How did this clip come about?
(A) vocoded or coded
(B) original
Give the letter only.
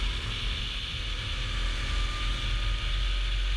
B